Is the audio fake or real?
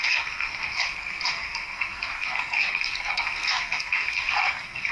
fake